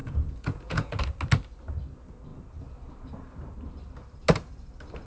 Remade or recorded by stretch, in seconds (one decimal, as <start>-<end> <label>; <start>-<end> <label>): 0.0-1.0 remade; 1.0-5.1 recorded